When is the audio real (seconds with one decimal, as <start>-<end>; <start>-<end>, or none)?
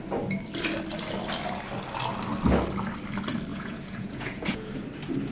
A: 0.0-3.5; 4.7-5.3